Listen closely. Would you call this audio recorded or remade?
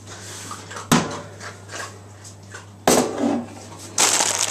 recorded